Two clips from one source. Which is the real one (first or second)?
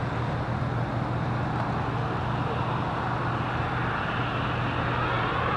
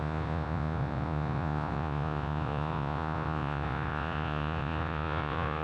first